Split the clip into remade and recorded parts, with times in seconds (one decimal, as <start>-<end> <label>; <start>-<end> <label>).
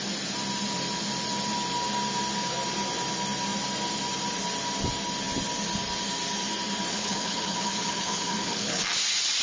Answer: 0.0-6.9 recorded; 6.9-8.8 remade; 8.8-9.4 recorded